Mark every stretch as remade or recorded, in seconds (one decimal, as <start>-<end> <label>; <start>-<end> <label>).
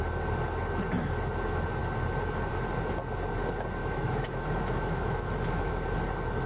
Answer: 0.0-3.8 recorded; 3.8-5.7 remade; 5.7-6.5 recorded